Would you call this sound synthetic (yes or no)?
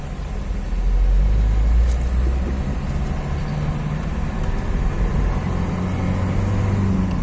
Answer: no